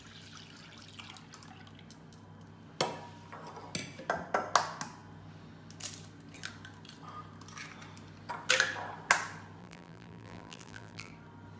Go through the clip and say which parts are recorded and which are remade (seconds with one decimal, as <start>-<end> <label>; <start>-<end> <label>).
0.0-9.6 recorded; 9.6-11.1 remade; 11.1-11.6 recorded